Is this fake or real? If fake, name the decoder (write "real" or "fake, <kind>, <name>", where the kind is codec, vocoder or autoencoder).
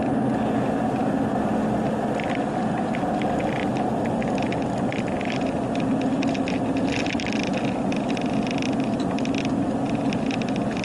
real